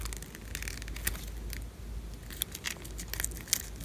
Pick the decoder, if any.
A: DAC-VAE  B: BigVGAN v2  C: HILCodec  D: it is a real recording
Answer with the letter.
D